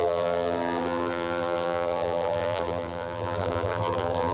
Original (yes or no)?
no